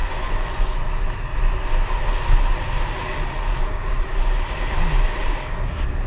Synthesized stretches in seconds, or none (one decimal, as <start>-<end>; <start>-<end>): 0.0-0.8